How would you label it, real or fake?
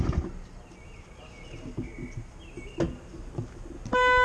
real